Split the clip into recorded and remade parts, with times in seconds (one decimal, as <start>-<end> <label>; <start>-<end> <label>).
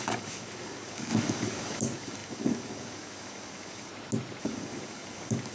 0.0-3.9 remade; 3.9-4.4 recorded; 4.4-5.5 remade